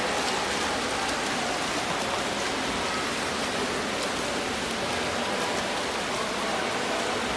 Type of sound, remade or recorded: recorded